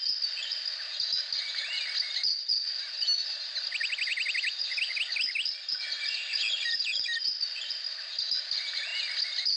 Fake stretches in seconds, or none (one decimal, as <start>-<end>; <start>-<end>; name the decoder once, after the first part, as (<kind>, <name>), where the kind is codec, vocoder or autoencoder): none

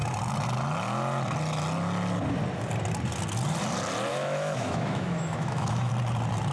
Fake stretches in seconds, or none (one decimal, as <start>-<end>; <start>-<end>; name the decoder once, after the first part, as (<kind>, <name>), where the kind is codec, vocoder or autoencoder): 4.1-5.9 (autoencoder, DAC-VAE)

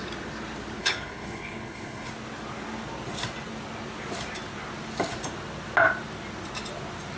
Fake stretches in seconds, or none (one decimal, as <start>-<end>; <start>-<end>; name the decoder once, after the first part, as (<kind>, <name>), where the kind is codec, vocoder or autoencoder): 0.8-2.1 (codec, HILCodec)

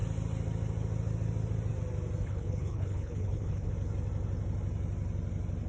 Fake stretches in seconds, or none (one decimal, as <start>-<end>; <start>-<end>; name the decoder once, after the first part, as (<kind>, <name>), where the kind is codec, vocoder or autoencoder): 2.2-3.7 (codec, HILCodec)

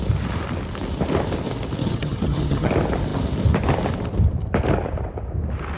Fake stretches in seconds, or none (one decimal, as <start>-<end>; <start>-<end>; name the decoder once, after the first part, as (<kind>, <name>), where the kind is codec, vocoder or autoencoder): 1.8-2.7 (vocoder, HiFi-GAN)

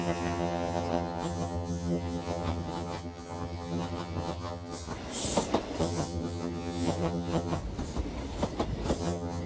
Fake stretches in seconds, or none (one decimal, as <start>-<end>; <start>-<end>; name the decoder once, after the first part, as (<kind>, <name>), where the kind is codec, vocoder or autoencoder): 0.0-4.9 (vocoder, HiFi-GAN); 5.8-7.6; 9.0-9.5

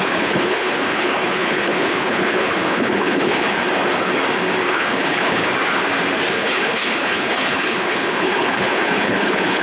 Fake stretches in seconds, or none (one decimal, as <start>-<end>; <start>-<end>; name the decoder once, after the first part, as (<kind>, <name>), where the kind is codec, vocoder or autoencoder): 0.0-3.6 (codec, HILCodec); 4.7-5.5; 6.3-9.6